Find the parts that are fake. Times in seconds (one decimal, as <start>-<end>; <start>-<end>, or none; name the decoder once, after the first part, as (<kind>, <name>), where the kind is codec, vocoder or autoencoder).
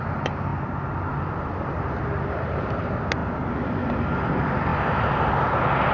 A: none